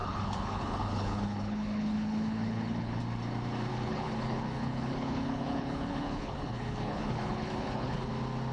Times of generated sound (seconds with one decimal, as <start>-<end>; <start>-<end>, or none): 0.0-3.0; 3.7-8.1